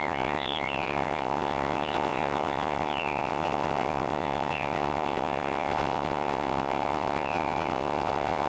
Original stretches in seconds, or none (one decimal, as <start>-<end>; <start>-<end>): none